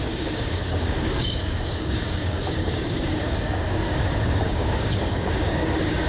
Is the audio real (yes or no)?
no